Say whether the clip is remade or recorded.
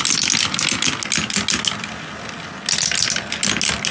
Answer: recorded